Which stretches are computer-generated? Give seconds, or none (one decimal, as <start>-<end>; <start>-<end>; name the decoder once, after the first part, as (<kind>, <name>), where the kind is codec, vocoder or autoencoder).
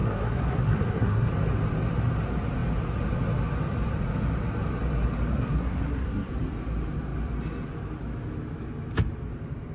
0.0-1.3 (codec, SNAC); 5.3-6.3